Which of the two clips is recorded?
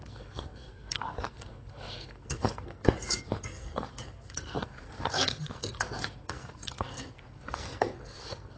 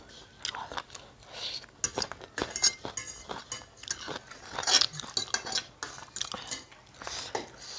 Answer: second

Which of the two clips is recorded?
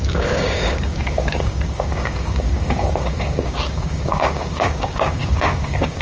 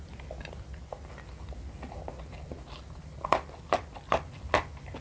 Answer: second